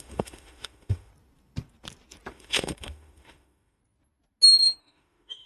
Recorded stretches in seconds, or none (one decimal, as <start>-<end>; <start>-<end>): 1.1-2.3; 3.8-4.8